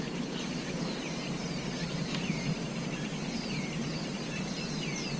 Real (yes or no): yes